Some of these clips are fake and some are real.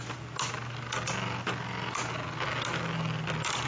real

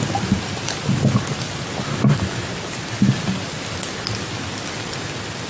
real